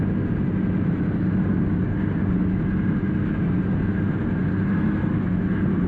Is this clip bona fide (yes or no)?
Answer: yes